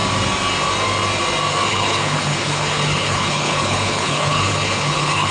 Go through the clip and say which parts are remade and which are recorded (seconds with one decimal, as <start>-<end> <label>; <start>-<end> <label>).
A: 0.0-1.7 recorded; 1.7-5.3 remade